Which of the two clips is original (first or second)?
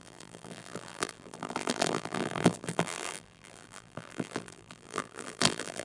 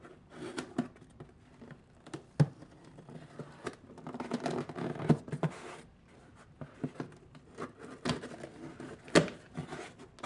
second